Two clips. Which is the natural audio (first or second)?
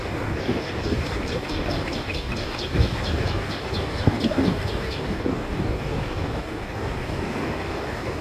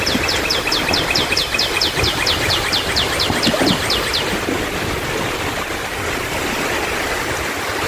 second